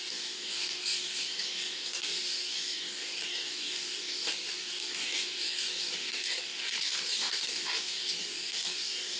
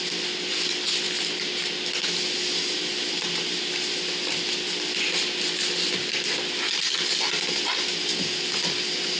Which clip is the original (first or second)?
second